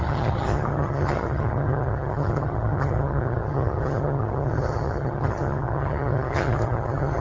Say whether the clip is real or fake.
fake